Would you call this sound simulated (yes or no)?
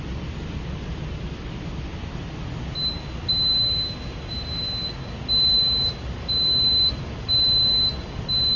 no